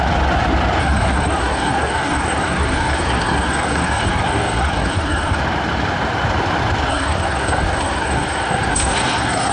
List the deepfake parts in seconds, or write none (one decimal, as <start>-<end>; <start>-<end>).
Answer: 0.8-5.4; 6.9-9.5